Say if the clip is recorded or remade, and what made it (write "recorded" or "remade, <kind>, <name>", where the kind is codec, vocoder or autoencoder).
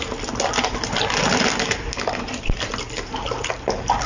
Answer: recorded